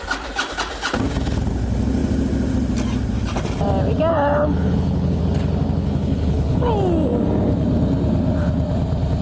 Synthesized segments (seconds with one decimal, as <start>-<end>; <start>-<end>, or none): 4.1-5.2; 5.8-6.7